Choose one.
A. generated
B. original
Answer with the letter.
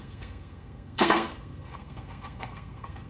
A